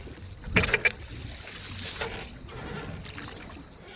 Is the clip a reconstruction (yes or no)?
no